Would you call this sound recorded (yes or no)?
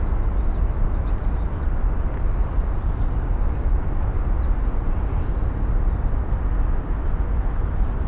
yes